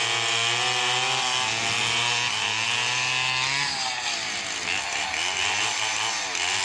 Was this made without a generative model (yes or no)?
yes